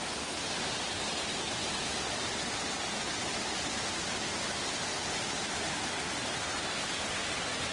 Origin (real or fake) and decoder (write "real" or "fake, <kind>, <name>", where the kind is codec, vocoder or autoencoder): real